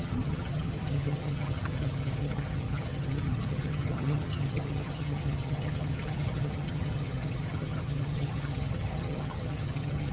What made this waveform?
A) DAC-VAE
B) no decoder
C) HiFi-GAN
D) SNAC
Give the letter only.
C